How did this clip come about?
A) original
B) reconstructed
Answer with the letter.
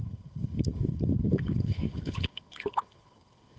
B